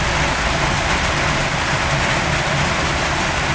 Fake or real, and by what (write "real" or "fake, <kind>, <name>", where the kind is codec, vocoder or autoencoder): real